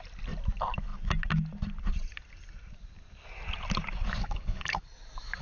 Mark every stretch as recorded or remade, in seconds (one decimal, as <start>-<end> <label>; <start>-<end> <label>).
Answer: 0.0-4.2 recorded; 4.2-4.8 remade; 4.8-5.4 recorded